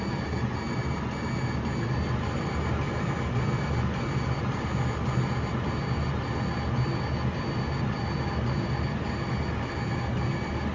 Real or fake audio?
real